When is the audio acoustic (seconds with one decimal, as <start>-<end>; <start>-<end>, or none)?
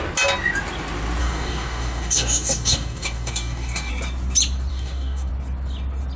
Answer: 0.0-1.2; 3.9-4.7; 5.3-6.2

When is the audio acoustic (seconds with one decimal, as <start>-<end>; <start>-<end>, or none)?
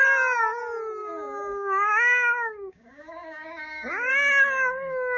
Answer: 0.0-1.0; 4.1-5.2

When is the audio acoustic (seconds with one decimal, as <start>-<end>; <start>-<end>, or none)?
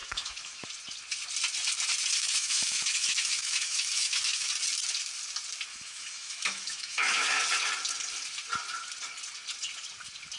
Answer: 0.7-2.0; 4.5-5.7; 7.4-10.4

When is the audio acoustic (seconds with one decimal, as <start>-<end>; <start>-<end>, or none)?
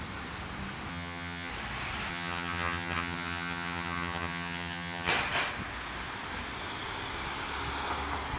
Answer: 0.0-0.9; 1.5-2.1; 5.1-8.4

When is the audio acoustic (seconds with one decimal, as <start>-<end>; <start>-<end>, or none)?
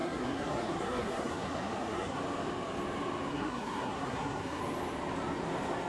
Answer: 2.2-3.3; 4.6-5.9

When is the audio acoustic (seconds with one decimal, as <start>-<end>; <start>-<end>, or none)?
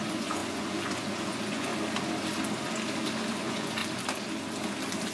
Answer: 1.7-3.3; 3.8-5.1